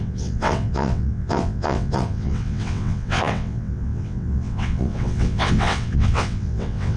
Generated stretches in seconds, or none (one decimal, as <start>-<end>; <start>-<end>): 0.0-7.0